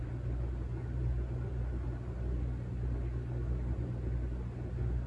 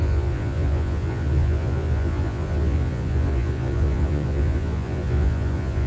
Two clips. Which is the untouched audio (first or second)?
first